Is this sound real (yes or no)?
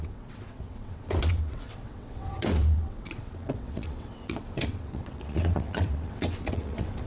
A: no